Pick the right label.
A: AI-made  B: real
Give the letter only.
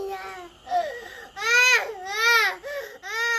B